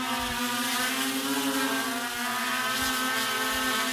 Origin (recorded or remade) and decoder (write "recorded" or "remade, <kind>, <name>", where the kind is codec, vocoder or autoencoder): recorded